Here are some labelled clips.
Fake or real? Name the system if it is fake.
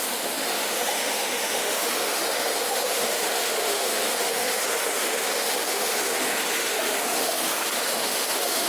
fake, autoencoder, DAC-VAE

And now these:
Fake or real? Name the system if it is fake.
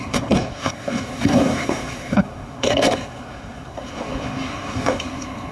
fake, codec, SNAC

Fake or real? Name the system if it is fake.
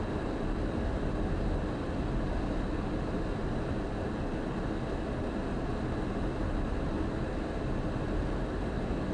real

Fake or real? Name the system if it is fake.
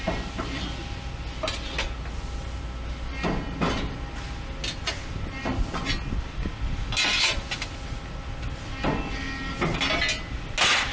real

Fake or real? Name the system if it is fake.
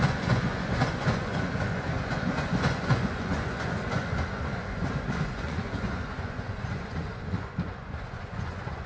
fake, vocoder, Vocos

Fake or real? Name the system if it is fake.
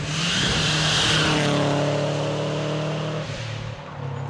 real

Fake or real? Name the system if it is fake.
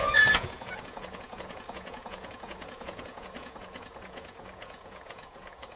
fake, vocoder, Vocos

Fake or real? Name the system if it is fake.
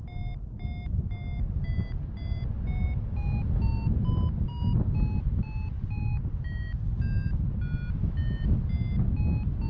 real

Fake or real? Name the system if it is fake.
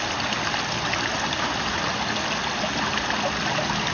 real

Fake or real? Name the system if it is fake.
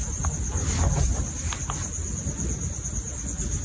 real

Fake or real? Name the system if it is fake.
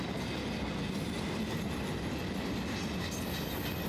real